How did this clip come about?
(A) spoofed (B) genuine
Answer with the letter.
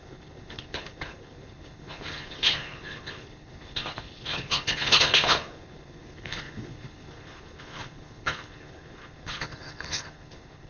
A